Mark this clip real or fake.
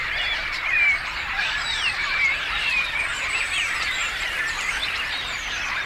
fake